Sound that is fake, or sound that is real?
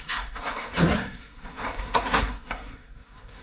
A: fake